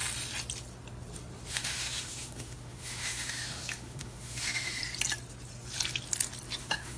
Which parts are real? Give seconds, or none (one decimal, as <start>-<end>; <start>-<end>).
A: 0.0-1.5; 4.8-6.6

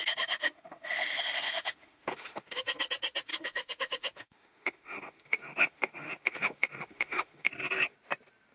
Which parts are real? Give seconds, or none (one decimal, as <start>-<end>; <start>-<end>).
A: 2.6-3.3; 7.5-8.5

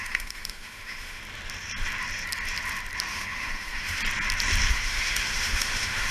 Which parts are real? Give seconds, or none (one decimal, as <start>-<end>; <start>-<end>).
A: 1.2-3.1; 4.0-4.7

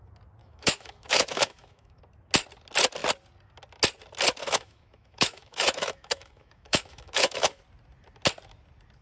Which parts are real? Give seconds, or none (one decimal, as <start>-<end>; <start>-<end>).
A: 0.0-0.4; 2.0-4.4; 7.6-9.0

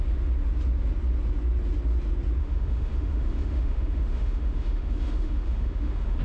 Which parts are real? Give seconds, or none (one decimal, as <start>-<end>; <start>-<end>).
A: 0.0-2.4